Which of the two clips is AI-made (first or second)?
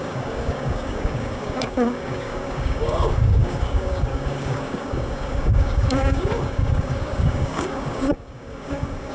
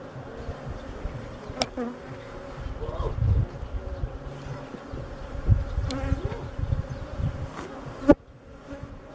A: first